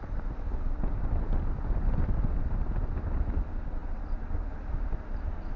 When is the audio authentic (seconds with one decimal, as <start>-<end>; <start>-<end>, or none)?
0.0-5.6